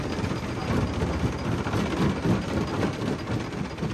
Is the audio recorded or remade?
recorded